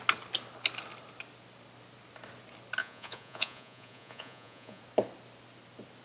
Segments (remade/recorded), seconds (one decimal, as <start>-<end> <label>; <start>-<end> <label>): 0.0-2.8 recorded; 2.8-4.8 remade; 4.8-6.0 recorded